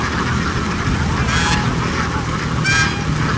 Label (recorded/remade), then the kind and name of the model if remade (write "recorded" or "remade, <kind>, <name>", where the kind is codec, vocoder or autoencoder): recorded